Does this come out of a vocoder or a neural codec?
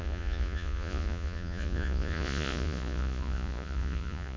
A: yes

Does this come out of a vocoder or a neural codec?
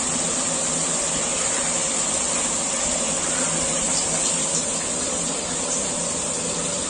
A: no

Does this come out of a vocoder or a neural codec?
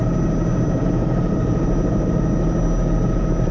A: no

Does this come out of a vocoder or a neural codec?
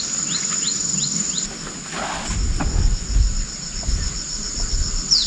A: no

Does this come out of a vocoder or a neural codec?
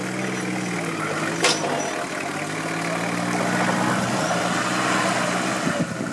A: no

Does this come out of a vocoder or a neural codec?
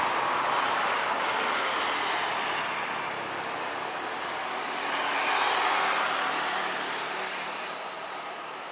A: no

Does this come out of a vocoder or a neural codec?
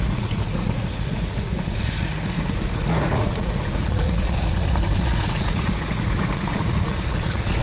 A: yes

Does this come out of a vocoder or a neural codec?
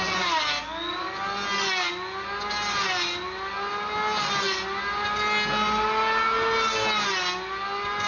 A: no